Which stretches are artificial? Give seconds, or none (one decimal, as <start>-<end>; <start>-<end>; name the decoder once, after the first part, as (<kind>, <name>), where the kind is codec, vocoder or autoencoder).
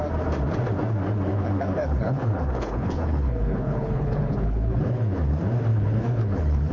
1.3-5.3 (codec, HILCodec); 5.7-6.7